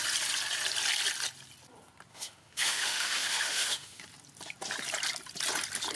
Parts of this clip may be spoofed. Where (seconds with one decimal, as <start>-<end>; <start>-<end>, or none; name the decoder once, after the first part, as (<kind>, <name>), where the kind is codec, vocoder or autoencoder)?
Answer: 2.1-4.0 (autoencoder, DAC-VAE)